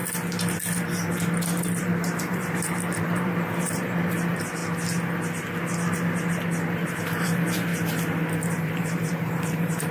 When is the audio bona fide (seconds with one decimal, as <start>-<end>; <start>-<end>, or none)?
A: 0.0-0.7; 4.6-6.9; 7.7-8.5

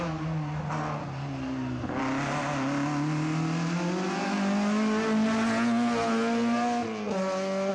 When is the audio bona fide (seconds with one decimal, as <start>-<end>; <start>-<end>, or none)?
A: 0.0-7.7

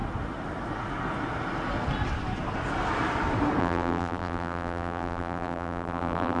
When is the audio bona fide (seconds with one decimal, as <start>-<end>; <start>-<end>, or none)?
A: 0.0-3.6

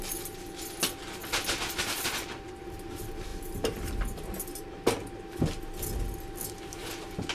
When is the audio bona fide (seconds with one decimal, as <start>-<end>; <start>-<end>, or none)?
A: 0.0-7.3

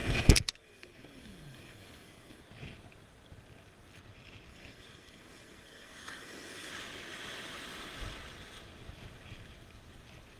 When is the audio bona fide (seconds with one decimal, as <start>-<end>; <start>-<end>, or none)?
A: 2.4-4.5; 6.7-10.4

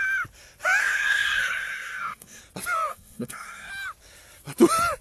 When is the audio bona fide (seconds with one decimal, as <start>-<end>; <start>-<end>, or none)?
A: 0.0-0.8; 2.4-2.9; 3.7-5.0